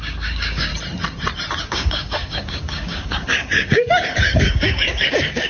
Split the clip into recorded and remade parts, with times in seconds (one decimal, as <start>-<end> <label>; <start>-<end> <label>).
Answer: 0.0-0.7 remade; 0.7-1.6 recorded; 1.6-5.5 remade